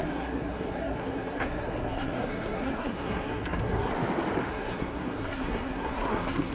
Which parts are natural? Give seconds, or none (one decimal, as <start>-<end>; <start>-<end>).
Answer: 3.9-4.5